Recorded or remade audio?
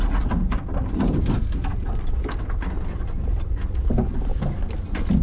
recorded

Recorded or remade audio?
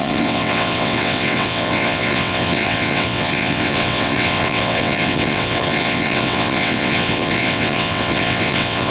remade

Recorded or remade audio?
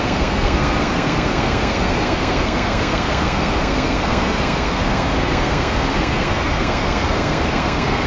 remade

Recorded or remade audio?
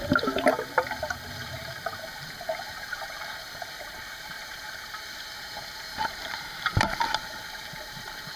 remade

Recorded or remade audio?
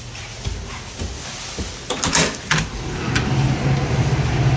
recorded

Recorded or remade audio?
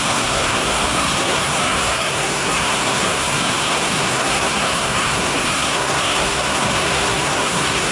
remade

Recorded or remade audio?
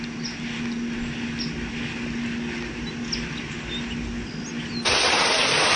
recorded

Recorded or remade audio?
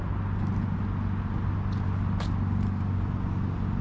recorded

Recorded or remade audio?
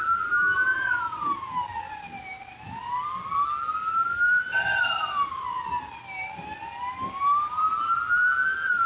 remade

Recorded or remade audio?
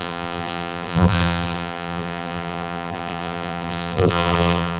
remade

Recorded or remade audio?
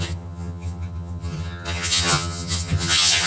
remade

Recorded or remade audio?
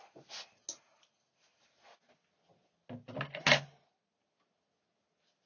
recorded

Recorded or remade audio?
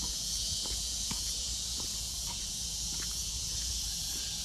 remade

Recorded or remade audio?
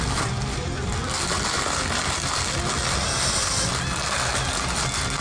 recorded